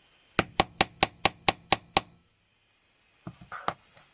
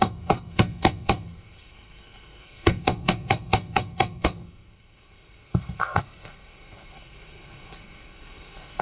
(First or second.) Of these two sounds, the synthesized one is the second